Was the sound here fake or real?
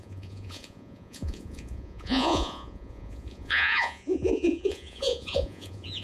fake